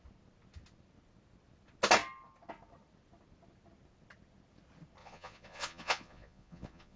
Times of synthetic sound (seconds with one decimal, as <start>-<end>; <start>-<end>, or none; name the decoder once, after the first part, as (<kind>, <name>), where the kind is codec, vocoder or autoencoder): 5.0-7.0 (vocoder, Vocos)